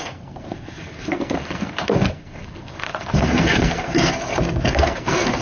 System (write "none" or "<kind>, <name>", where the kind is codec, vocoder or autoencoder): codec, SNAC